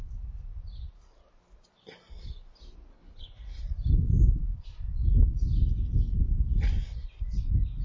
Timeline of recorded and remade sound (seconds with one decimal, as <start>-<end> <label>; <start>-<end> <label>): 0.0-2.9 recorded; 2.9-3.6 remade; 3.6-7.8 recorded